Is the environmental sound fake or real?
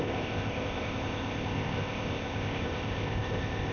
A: fake